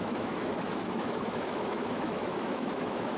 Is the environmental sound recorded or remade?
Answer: remade